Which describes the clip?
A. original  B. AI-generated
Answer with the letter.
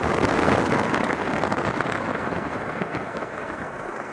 B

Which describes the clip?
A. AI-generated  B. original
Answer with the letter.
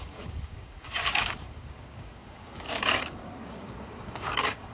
A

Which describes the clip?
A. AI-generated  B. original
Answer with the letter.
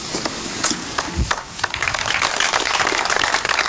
A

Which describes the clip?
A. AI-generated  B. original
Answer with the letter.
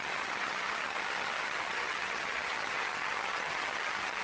A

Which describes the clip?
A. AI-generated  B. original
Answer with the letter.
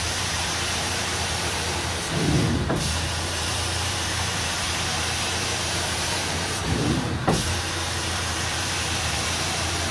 A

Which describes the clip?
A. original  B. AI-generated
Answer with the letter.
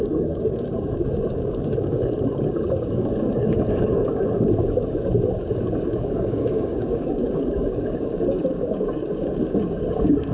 B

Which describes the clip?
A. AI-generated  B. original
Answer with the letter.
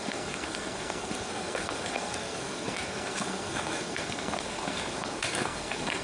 A